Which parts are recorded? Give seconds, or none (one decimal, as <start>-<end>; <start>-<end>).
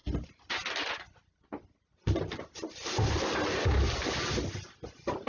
0.0-5.3